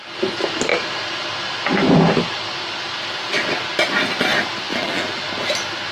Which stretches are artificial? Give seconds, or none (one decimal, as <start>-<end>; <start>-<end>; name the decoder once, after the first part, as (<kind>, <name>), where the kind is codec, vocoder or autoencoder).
4.7-5.2 (vocoder, BigVGAN v2)